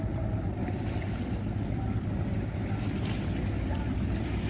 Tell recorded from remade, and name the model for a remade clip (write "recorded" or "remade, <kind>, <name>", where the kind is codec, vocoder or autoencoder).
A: recorded